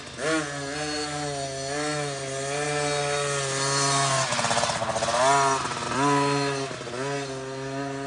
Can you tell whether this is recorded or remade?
recorded